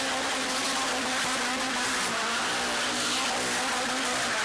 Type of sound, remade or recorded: recorded